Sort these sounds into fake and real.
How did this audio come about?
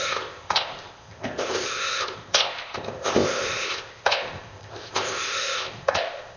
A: fake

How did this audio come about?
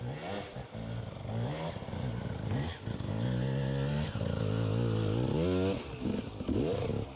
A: real